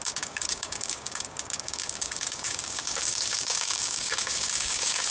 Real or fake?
fake